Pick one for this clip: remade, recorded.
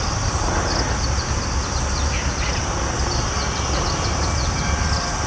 recorded